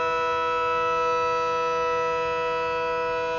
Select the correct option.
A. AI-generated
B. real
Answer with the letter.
B